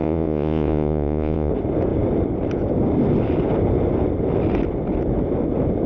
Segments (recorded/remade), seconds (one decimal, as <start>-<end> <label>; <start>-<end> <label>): 0.0-1.5 remade; 1.5-5.9 recorded

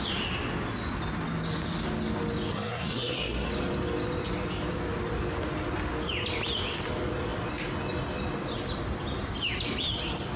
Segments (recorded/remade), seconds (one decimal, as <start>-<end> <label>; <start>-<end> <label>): 0.0-2.5 recorded; 2.5-3.5 remade; 3.5-10.4 recorded

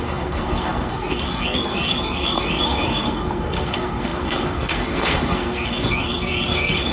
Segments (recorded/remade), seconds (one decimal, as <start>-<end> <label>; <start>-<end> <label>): 0.0-6.9 remade

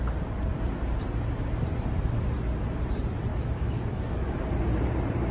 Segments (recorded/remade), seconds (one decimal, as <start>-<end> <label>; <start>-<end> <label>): 0.0-3.3 recorded; 3.3-4.4 remade; 4.4-5.3 recorded